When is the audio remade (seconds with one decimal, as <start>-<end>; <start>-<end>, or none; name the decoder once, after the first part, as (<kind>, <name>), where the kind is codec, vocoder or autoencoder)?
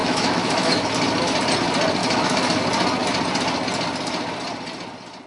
0.0-0.9 (autoencoder, DAC-VAE); 2.0-2.6